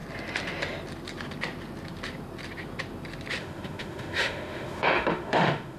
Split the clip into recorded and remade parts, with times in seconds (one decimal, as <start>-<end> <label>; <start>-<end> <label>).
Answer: 0.0-3.4 recorded; 3.4-5.8 remade